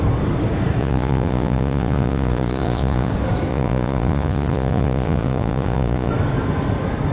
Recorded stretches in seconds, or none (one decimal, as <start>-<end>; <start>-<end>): 0.0-0.8; 3.1-3.5; 6.1-7.1